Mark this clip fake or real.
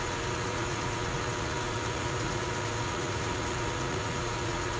fake